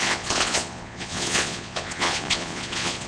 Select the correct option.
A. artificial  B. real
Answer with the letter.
A